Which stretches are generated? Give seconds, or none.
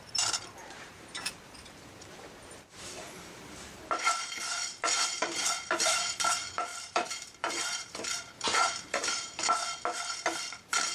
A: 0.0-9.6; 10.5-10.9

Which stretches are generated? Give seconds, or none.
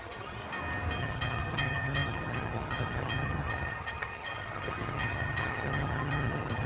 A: 0.0-0.4; 1.0-6.7